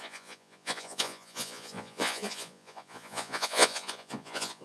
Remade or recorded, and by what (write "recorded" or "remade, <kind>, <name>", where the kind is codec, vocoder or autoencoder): remade, vocoder, Vocos